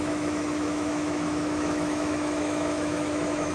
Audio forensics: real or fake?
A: fake